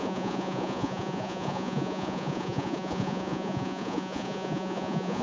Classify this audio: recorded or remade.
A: remade